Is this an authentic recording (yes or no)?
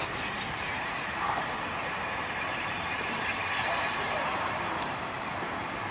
no